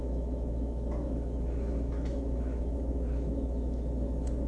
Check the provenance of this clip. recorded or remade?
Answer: remade